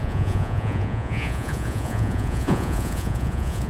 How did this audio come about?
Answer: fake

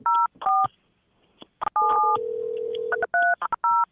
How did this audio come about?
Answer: real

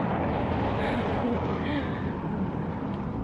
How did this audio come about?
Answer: real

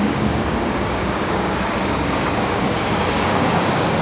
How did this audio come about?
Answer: fake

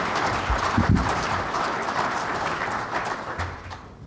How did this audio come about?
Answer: fake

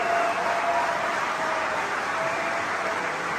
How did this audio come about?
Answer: real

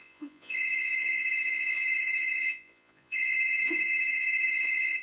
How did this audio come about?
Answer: fake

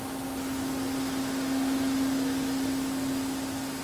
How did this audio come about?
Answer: real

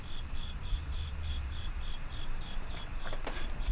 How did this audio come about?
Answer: fake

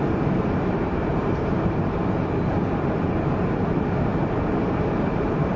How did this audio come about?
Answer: fake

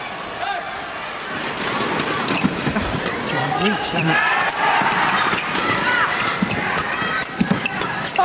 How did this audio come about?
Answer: fake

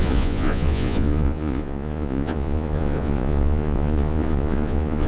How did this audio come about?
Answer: fake